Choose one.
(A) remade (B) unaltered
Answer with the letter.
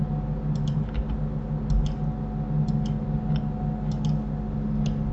B